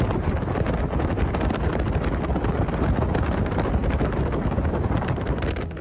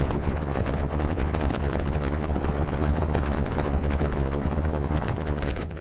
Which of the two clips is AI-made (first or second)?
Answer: second